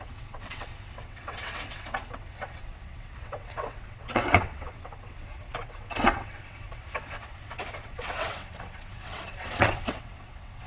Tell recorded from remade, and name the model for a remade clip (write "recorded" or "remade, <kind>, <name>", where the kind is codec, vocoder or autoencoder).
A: remade, vocoder, WaveNeXt